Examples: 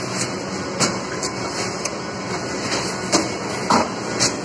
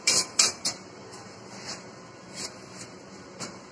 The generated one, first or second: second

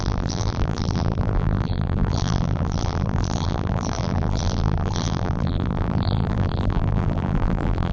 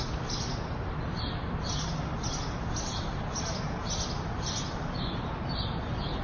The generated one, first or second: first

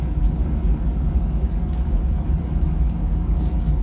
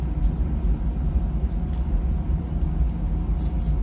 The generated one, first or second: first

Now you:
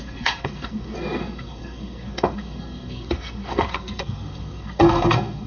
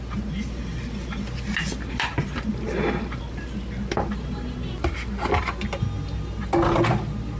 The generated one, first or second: first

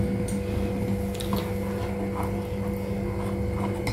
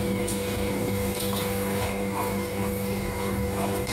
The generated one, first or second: second